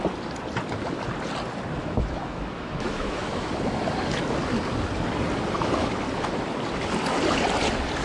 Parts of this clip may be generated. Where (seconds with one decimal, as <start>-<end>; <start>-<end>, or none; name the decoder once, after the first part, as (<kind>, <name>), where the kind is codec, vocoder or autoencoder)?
1.8-3.5 (autoencoder, DAC-VAE)